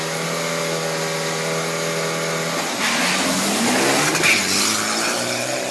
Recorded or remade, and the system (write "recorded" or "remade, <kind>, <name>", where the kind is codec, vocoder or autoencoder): recorded